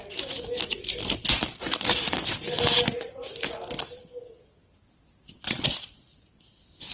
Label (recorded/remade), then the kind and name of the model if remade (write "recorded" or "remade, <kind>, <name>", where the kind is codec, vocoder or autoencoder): recorded